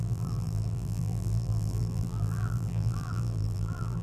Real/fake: fake